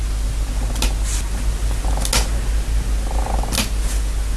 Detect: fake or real real